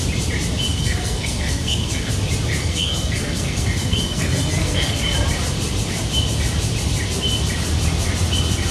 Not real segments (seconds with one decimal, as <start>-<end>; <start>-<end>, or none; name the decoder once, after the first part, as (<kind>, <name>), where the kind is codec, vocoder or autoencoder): 0.7-2.1 (codec, SNAC); 2.6-5.0